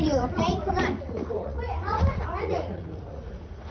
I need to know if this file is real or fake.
fake